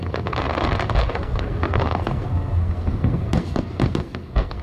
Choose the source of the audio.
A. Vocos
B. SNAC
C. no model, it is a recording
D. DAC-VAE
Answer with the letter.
B